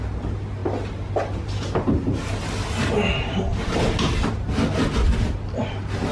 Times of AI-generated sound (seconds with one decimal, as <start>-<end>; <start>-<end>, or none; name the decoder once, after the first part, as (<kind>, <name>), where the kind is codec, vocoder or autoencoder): none